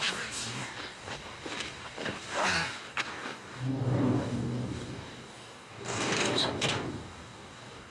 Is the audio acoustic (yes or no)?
no